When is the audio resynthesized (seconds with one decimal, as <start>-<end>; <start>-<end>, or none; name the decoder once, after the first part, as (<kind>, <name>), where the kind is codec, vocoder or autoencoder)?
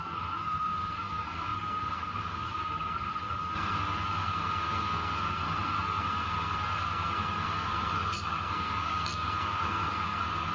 0.0-10.5 (codec, SNAC)